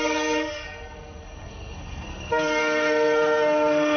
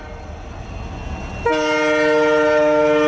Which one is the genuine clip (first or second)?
second